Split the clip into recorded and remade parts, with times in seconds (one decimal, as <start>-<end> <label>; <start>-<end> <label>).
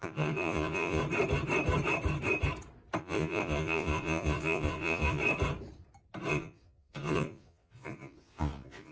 0.0-1.0 remade; 1.0-3.0 recorded; 3.0-5.2 remade; 5.2-6.3 recorded; 6.3-8.9 remade